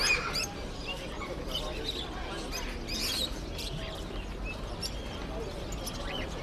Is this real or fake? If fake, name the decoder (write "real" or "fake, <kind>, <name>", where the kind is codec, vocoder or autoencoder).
real